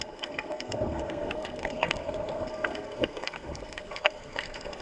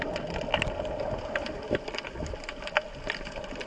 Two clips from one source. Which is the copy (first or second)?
first